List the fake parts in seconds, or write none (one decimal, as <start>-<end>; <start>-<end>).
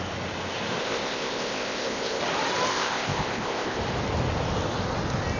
0.8-2.2; 2.7-3.8